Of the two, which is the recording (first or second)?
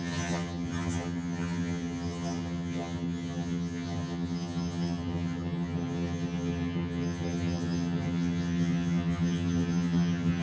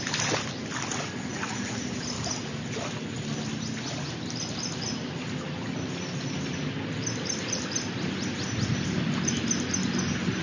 second